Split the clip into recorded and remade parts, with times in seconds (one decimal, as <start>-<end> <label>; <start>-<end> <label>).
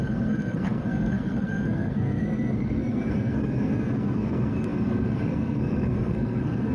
0.0-6.7 remade